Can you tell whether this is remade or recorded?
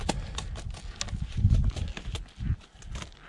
recorded